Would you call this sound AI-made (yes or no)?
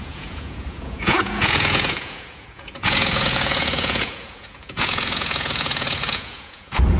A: yes